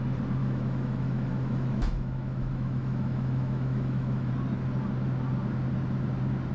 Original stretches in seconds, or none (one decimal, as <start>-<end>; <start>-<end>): 0.0-0.4; 4.3-6.5